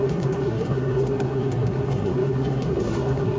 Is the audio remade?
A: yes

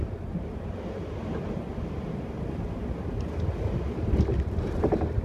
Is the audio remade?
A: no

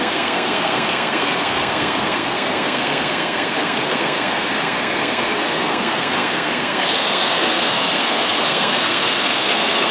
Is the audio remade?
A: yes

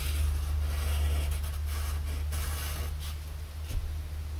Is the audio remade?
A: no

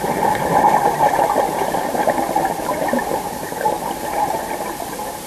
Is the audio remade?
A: no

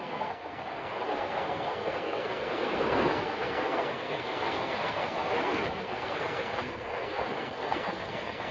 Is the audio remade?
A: yes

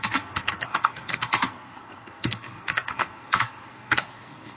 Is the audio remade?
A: yes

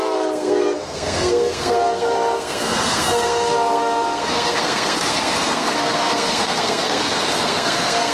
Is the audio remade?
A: yes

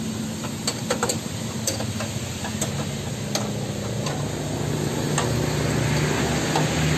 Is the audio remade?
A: no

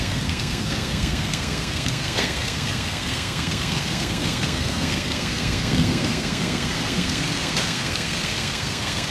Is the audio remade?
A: yes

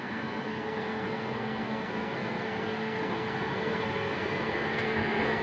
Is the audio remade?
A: yes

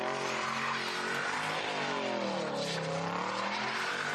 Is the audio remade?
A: no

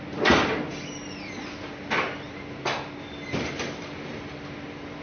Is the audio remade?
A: no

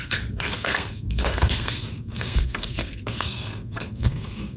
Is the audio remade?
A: yes